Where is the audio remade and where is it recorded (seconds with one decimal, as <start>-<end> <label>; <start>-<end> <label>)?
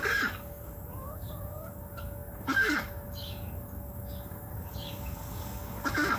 0.0-6.2 remade